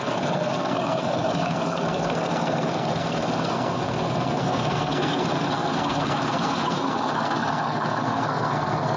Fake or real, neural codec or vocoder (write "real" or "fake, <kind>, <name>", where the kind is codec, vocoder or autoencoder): fake, codec, SNAC